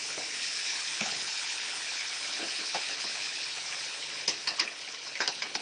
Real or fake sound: fake